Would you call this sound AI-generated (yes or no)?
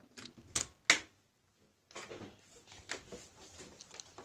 no